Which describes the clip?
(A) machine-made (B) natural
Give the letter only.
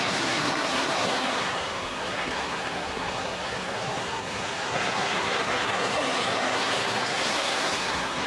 A